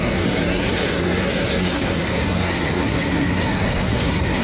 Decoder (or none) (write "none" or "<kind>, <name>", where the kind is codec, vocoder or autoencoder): codec, SNAC